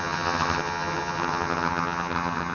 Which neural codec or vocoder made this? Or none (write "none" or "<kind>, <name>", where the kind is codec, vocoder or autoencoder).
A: vocoder, HiFi-GAN